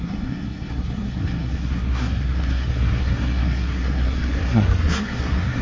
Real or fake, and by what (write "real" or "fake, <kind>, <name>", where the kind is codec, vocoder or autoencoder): fake, codec, SNAC